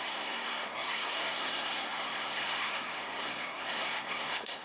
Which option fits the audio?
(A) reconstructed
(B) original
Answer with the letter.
A